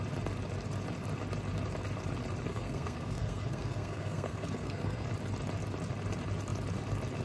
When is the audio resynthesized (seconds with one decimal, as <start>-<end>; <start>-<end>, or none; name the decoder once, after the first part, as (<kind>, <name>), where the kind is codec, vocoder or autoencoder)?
2.5-5.1 (codec, SNAC)